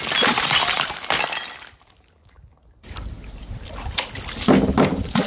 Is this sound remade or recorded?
recorded